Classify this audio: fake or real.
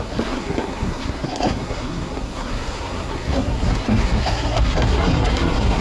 fake